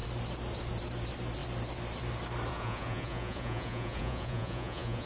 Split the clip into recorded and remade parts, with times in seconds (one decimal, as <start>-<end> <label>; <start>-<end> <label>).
0.0-2.5 recorded; 2.5-5.1 remade